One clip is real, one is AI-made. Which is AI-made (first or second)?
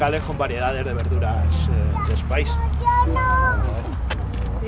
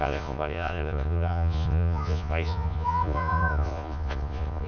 second